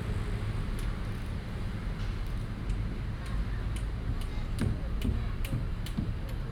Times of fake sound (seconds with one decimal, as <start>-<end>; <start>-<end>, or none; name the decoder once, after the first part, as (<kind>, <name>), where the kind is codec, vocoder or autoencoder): none